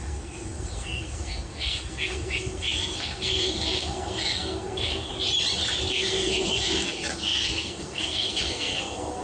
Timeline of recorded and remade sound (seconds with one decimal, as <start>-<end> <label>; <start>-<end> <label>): 0.0-5.1 remade; 5.1-5.9 recorded; 5.9-9.2 remade